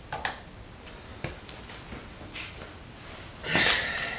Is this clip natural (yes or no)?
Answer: yes